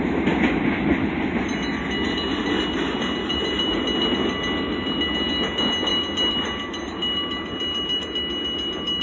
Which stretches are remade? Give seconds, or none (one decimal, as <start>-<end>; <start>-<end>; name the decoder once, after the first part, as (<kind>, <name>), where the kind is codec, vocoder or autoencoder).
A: 3.3-3.8 (vocoder, BigVGAN v2)